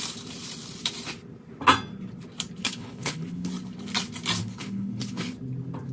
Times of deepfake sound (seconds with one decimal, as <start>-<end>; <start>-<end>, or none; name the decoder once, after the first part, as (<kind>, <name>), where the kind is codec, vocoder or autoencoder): 2.6-3.5 (codec, HILCodec); 4.4-5.3